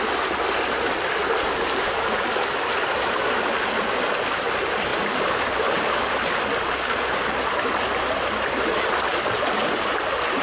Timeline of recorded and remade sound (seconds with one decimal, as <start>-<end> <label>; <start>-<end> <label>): 0.0-4.9 recorded; 4.9-6.4 remade; 6.4-10.4 recorded